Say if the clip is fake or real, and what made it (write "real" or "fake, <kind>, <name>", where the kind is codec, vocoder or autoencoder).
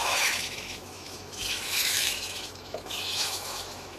fake, autoencoder, DAC-VAE